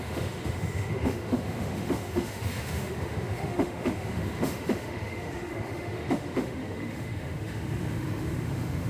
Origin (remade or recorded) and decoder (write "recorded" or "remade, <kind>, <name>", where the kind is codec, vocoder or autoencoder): remade, autoencoder, DAC-VAE